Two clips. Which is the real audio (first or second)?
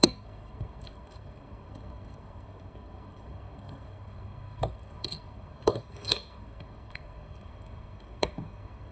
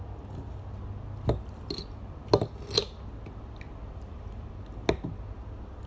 second